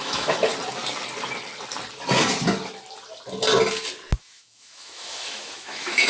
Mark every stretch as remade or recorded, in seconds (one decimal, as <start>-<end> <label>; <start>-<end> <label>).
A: 0.0-0.5 remade; 0.5-4.2 recorded; 4.2-6.1 remade